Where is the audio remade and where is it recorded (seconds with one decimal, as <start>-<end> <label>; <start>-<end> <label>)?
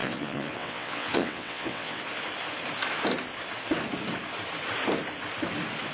0.0-2.0 remade; 2.0-5.9 recorded